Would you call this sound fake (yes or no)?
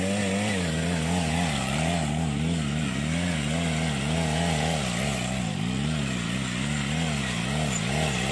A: no